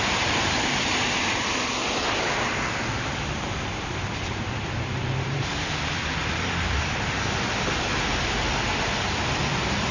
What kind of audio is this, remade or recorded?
remade